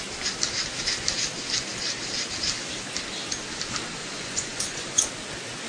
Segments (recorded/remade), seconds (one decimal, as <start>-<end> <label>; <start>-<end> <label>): 0.0-4.0 recorded; 4.0-5.1 remade; 5.1-5.7 recorded